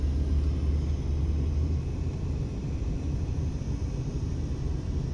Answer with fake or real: real